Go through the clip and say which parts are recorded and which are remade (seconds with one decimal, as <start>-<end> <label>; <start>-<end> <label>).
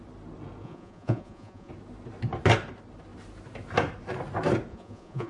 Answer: 0.0-0.6 recorded; 0.6-1.7 remade; 1.7-4.7 recorded; 4.7-5.3 remade